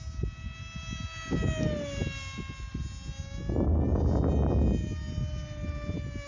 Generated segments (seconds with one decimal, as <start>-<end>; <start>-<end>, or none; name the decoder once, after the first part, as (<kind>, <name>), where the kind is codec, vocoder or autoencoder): none